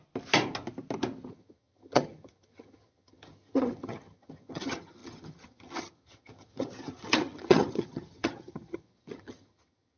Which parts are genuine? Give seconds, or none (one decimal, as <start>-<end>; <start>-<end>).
0.0-1.3